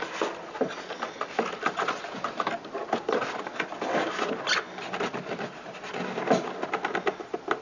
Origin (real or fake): real